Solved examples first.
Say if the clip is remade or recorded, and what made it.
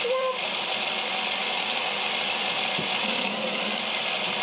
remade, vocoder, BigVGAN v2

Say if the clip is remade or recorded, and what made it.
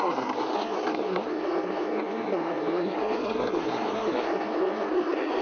remade, codec, SNAC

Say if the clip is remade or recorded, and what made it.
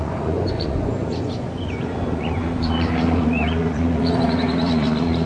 remade, vocoder, Vocos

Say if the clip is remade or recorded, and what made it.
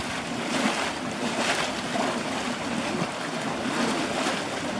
recorded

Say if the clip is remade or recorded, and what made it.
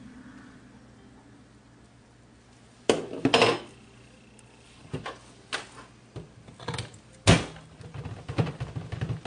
recorded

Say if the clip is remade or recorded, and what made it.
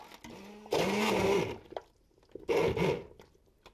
recorded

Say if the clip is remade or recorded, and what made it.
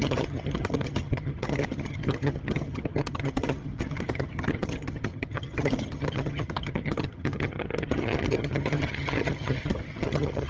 remade, vocoder, HiFi-GAN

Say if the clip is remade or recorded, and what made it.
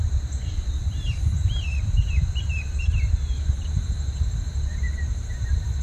remade, vocoder, BigVGAN v2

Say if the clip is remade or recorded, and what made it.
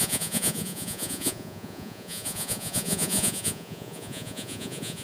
remade, vocoder, Vocos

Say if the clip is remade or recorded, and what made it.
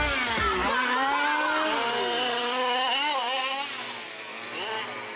recorded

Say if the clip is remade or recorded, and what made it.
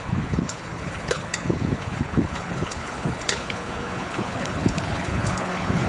remade, codec, HILCodec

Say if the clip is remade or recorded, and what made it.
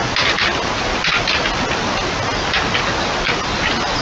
recorded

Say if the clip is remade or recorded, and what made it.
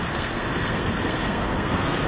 remade, codec, SNAC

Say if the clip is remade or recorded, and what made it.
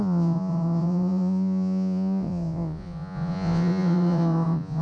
remade, vocoder, Vocos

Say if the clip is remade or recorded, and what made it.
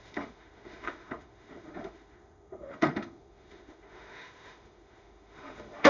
remade, autoencoder, DAC-VAE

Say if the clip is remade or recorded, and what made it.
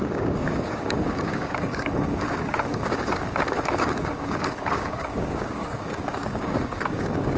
remade, codec, DAC